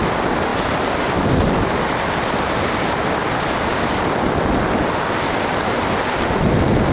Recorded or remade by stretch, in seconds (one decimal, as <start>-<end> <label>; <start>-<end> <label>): 0.0-0.5 recorded; 0.5-4.6 remade; 4.6-6.9 recorded